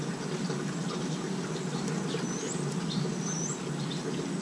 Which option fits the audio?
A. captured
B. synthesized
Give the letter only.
A